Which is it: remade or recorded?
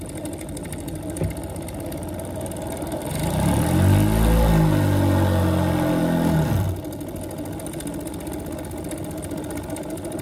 recorded